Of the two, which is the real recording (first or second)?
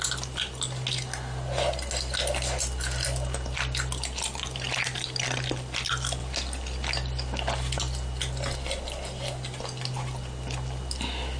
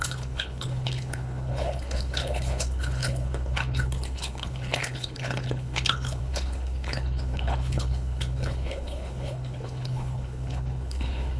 first